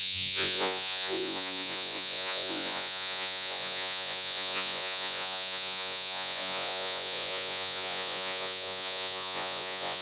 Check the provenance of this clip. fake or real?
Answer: fake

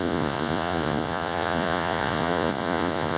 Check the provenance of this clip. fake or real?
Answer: fake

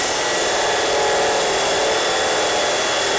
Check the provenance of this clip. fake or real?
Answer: real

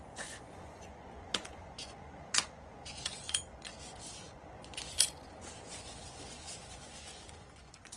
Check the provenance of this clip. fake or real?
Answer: fake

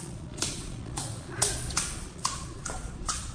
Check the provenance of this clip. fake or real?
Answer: fake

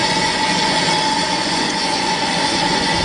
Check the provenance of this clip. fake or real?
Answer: fake